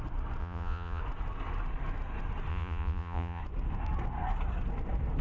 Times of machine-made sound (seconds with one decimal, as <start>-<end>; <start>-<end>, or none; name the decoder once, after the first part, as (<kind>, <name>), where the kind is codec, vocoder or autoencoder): 0.4-1.0 (vocoder, Vocos); 2.5-3.4